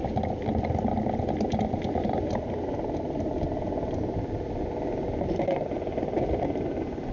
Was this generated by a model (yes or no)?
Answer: no